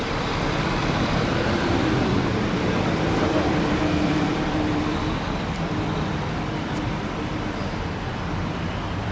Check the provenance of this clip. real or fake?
fake